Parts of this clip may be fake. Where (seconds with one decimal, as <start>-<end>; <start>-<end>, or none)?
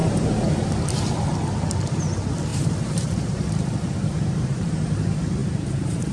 2.5-4.7; 5.4-6.1